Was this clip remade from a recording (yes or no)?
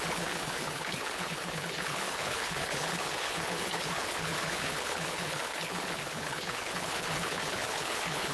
yes